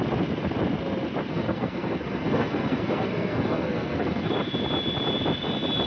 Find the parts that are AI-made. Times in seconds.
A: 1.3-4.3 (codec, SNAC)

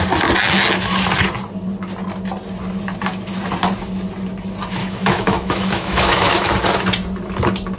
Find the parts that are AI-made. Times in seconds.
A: 4.8-6.5 (autoencoder, DAC-VAE)

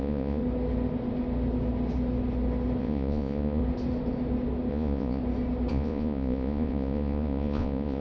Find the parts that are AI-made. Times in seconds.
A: 0.0-0.4 (vocoder, Vocos); 2.8-3.6; 4.7-5.2; 5.7-8.0

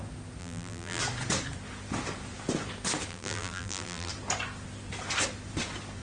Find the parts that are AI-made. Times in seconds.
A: 0.4-1.0 (vocoder, BigVGAN v2); 3.1-4.1